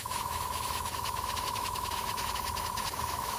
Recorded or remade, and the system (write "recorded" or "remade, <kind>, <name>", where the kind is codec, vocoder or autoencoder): remade, autoencoder, DAC-VAE